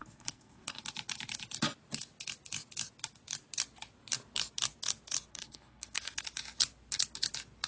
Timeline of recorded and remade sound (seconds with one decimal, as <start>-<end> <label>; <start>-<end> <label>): 0.0-0.8 remade; 0.8-5.3 recorded; 5.3-6.2 remade; 6.2-7.7 recorded